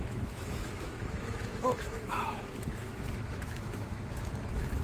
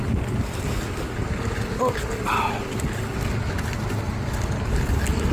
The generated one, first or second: first